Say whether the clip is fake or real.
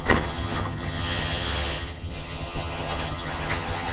fake